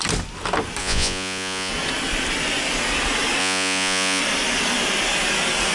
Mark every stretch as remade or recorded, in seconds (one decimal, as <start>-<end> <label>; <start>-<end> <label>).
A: 0.0-0.8 recorded; 0.8-1.7 remade; 1.7-3.4 recorded; 3.4-4.2 remade; 4.2-5.7 recorded